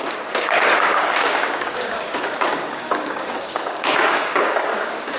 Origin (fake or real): fake